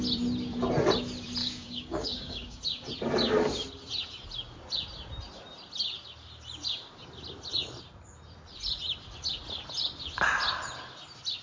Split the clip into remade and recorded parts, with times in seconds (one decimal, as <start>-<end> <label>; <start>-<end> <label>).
0.0-1.4 recorded; 1.4-2.6 remade; 2.6-11.4 recorded